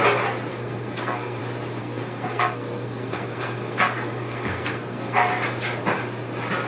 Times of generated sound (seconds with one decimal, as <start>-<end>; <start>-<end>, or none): 0.5-1.4; 1.8-5.3